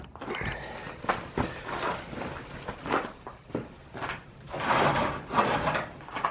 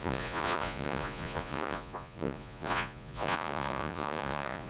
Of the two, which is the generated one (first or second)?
second